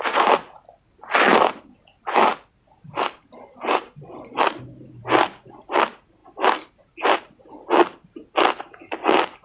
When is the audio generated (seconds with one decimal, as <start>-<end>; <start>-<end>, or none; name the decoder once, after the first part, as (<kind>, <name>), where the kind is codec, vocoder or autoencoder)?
none